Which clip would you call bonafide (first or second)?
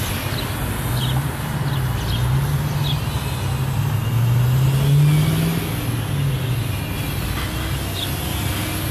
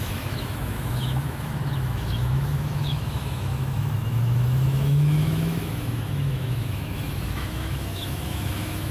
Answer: first